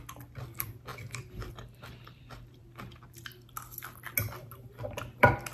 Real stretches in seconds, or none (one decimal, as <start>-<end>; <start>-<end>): 0.0-5.5